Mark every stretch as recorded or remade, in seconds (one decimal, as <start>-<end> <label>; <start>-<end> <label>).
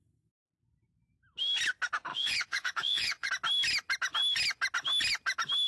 0.0-2.1 recorded; 2.1-3.3 remade; 3.3-5.7 recorded